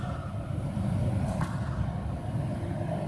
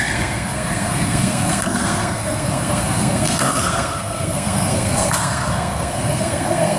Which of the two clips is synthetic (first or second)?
second